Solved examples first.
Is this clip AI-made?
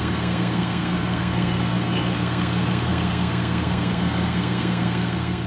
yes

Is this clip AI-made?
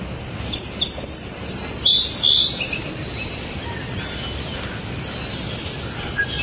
no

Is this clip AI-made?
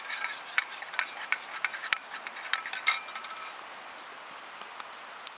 no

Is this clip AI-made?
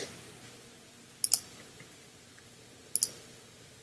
no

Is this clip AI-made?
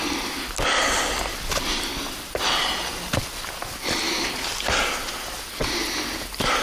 no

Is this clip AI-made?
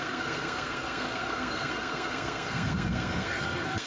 yes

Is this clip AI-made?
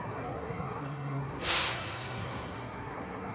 yes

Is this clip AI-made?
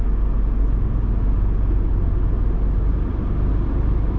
no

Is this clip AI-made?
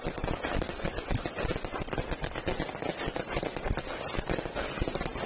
no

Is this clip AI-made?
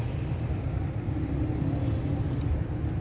no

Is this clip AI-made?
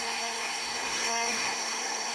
yes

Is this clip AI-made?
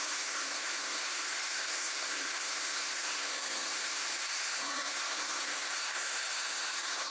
yes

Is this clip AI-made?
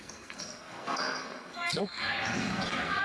yes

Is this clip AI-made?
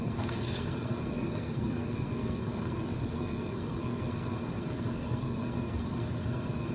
yes